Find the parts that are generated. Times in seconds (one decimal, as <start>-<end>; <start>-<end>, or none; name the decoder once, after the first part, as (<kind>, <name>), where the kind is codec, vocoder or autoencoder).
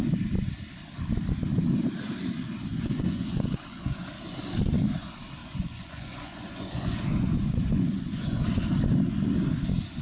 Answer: 2.7-4.1 (vocoder, Vocos); 5.4-8.4